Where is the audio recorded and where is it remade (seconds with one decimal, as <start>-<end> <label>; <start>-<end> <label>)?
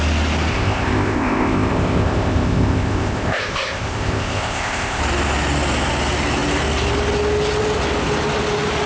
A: 0.0-0.5 recorded; 0.5-5.0 remade; 5.0-8.9 recorded